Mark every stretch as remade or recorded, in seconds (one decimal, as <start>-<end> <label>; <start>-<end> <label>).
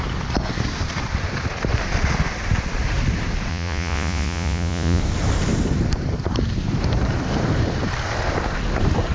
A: 0.0-3.5 recorded; 3.5-5.0 remade; 5.0-9.1 recorded